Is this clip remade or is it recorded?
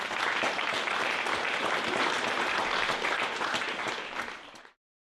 recorded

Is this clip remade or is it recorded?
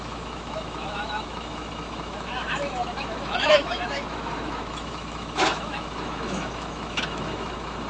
remade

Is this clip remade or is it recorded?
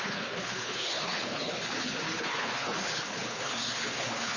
remade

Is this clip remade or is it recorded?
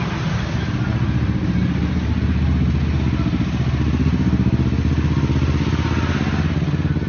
recorded